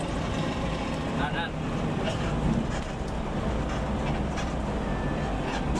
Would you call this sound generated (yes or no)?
no